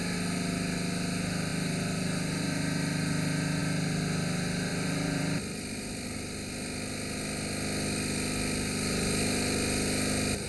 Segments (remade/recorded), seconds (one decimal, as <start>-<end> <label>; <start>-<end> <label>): 0.0-1.5 recorded; 1.5-3.6 remade; 3.6-4.7 recorded; 4.7-6.1 remade; 6.1-10.5 recorded